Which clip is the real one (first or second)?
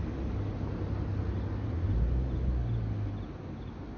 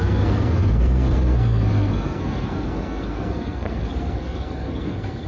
first